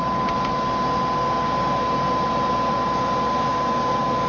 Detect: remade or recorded recorded